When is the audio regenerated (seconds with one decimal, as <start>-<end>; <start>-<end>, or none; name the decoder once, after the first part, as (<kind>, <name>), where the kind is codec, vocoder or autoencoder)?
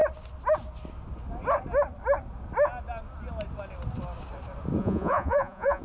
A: 4.8-5.8 (vocoder, Vocos)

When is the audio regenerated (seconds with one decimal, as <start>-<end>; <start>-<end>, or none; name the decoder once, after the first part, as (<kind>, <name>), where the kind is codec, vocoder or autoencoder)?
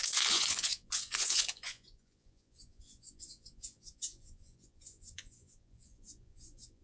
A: 0.0-6.8 (vocoder, Vocos)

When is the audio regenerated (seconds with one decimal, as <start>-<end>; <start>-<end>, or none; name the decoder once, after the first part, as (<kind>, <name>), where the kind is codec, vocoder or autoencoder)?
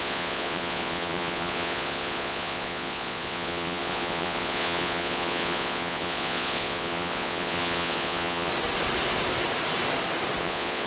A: 0.0-8.5 (vocoder, Vocos); 10.4-10.9